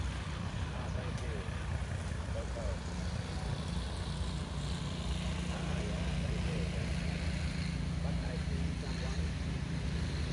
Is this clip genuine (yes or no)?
yes